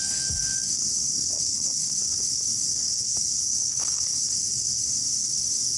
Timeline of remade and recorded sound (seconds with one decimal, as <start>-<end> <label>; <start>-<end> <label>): 0.0-5.8 remade